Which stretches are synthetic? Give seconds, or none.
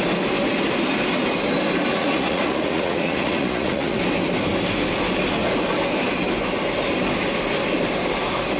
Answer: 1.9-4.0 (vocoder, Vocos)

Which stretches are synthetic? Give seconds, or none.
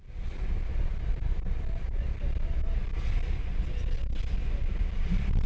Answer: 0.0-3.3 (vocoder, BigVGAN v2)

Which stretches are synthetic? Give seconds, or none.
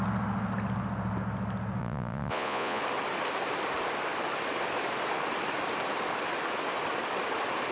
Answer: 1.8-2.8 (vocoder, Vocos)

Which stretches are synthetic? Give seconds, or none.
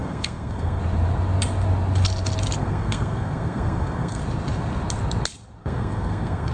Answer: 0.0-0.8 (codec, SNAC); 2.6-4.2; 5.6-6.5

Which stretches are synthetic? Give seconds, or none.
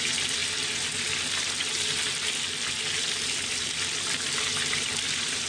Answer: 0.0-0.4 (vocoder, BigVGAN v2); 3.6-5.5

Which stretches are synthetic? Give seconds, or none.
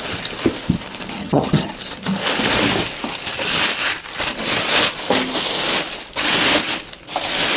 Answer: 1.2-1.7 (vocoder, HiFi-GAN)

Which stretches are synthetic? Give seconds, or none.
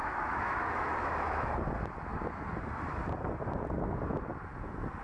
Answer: 0.0-1.5 (autoencoder, DAC-VAE)